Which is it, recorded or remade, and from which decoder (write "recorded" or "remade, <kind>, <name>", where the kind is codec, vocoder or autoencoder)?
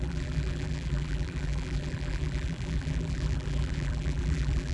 remade, vocoder, BigVGAN v2